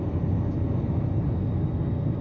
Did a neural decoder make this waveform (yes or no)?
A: no